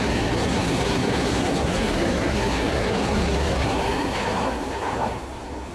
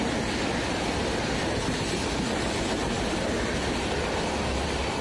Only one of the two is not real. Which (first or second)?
first